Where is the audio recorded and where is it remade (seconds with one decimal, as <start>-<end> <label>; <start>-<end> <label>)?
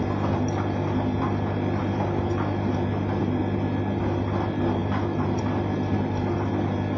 0.0-7.0 recorded